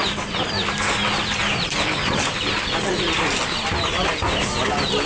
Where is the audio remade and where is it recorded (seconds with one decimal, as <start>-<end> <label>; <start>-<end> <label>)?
0.0-5.1 recorded